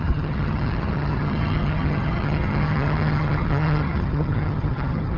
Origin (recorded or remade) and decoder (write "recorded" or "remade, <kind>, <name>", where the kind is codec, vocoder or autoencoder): remade, vocoder, HiFi-GAN